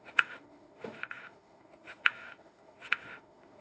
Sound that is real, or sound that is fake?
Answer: fake